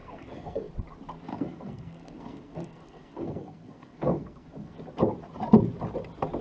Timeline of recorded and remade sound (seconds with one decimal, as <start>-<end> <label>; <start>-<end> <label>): 0.0-0.7 remade; 0.7-1.3 recorded; 1.3-4.8 remade; 4.8-6.4 recorded